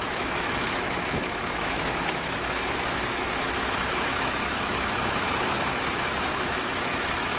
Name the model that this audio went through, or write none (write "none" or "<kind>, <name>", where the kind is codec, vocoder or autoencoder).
autoencoder, DAC-VAE